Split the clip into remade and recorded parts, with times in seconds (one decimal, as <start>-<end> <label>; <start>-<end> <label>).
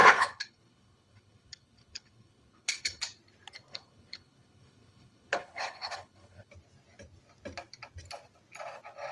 0.0-3.0 remade; 3.0-3.7 recorded; 3.7-6.5 remade; 6.5-9.1 recorded